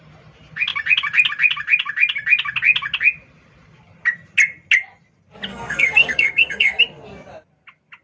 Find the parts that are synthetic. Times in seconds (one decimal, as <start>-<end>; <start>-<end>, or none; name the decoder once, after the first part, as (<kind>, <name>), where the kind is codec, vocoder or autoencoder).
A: 5.5-6.8 (codec, SNAC)